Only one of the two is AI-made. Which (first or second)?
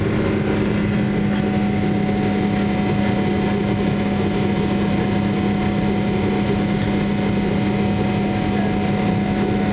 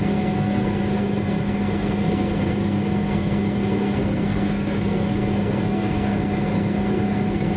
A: second